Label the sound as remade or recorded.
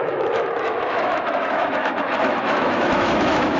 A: remade